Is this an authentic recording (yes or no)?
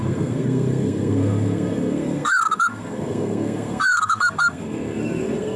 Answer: no